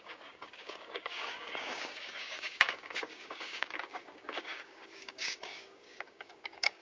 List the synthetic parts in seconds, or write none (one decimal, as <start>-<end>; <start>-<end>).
0.0-6.8